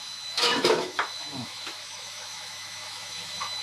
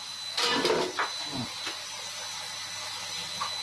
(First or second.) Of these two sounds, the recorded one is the second